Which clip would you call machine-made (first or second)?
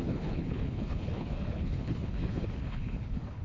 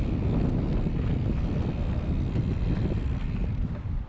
first